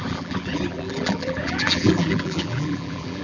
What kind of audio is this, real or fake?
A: fake